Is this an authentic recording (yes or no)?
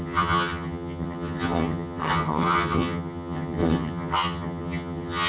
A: no